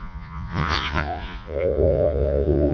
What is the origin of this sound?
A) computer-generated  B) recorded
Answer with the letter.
A